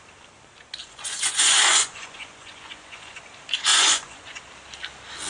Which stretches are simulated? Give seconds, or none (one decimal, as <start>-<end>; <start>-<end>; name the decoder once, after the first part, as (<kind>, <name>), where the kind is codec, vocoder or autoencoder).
0.8-3.2 (vocoder, Vocos); 3.7-4.4

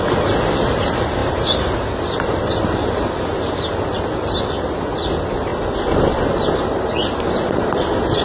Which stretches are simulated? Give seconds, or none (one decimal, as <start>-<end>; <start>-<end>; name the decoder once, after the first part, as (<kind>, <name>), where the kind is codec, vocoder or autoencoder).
0.0-1.2 (vocoder, BigVGAN v2); 2.4-5.5; 7.4-8.2

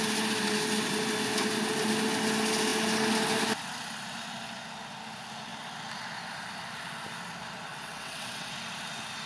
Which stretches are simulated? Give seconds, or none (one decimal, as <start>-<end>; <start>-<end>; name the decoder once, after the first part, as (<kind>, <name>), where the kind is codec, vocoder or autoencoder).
7.7-8.5 (vocoder, WaveNeXt)

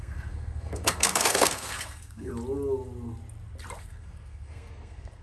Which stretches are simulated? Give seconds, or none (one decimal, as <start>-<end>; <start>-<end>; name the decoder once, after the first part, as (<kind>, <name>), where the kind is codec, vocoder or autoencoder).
0.0-2.3 (codec, SNAC); 3.8-5.2

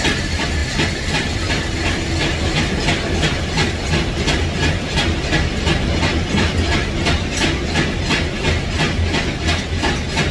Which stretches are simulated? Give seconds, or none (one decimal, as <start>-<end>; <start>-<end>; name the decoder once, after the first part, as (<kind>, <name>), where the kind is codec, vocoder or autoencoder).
0.6-2.7 (vocoder, BigVGAN v2)

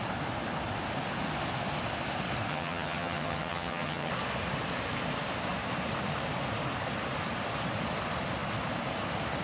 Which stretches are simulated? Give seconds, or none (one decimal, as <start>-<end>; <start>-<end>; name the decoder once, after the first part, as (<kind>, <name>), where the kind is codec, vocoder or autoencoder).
2.5-4.1 (vocoder, HiFi-GAN)

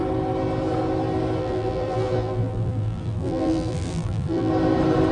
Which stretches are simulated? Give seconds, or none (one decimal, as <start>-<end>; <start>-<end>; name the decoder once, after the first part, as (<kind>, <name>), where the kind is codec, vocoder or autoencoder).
1.4-4.5 (vocoder, BigVGAN v2)